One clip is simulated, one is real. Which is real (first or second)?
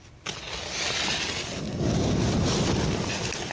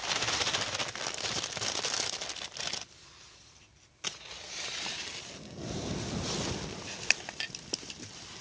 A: first